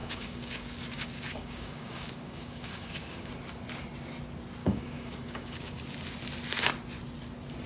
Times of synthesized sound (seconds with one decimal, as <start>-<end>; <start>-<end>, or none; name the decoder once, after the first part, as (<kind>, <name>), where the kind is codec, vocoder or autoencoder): 0.0-3.3 (codec, DAC); 4.6-5.8